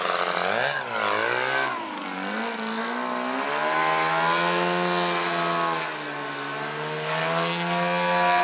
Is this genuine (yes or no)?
yes